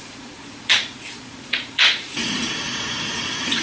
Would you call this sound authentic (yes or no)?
no